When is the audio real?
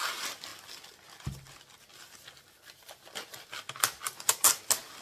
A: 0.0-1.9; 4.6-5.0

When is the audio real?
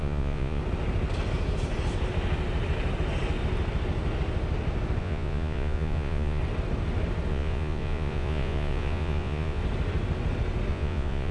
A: 0.6-5.0; 6.4-7.3; 9.6-10.7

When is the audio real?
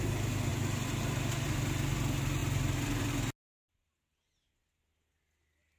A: 0.0-5.8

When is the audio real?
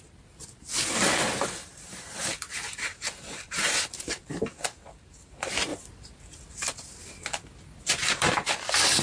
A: 0.0-1.6; 5.2-9.0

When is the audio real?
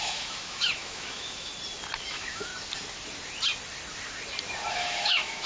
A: 1.5-2.1; 2.5-4.7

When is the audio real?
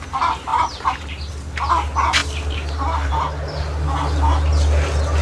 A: 0.0-0.5; 1.3-2.2; 3.1-5.2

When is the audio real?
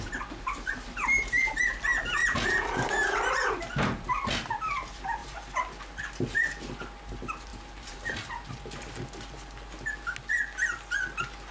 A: 0.0-2.2; 2.9-5.2; 6.0-7.5; 8.6-11.5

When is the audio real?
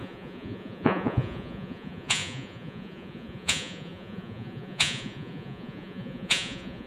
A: none